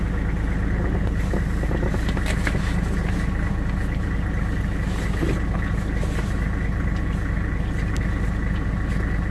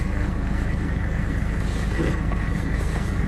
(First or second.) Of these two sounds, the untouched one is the first